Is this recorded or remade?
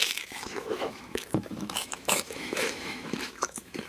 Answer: remade